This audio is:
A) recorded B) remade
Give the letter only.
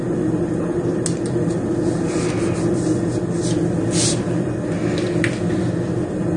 A